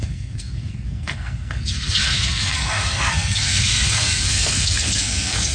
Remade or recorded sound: remade